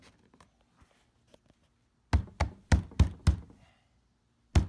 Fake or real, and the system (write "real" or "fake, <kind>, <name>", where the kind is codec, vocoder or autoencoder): real